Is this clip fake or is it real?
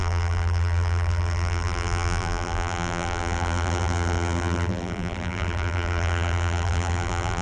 fake